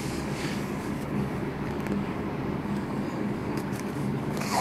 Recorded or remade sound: remade